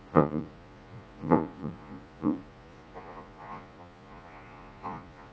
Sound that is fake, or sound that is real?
fake